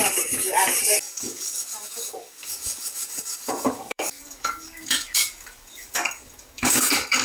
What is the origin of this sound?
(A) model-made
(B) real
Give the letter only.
A